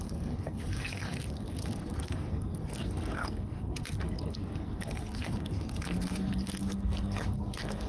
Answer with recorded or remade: remade